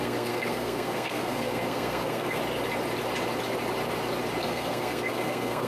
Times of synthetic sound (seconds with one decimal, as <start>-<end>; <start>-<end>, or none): 0.0-2.4; 4.4-5.7